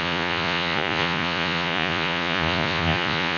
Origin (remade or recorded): remade